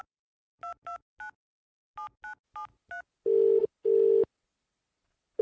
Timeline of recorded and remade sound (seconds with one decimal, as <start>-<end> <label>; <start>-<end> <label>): 0.0-5.4 recorded